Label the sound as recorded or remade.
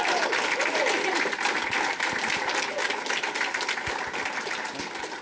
recorded